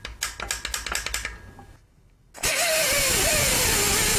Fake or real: real